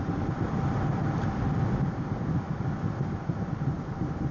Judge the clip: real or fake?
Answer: real